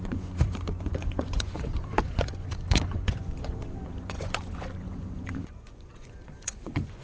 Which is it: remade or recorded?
remade